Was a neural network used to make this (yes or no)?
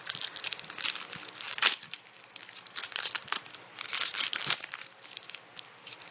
no